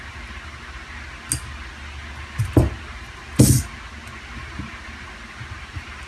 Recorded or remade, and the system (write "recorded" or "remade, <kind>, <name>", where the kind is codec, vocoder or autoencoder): recorded